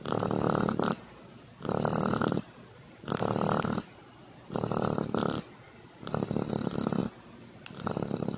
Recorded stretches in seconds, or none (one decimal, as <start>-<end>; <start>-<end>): 0.0-8.4

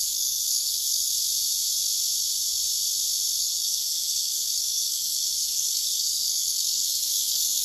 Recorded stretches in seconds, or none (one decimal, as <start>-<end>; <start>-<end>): 1.1-3.4